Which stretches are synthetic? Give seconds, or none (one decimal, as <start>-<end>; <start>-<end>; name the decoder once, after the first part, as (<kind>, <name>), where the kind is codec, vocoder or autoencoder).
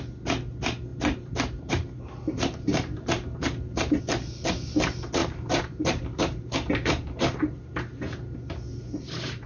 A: 0.9-4.0 (vocoder, BigVGAN v2); 5.2-9.5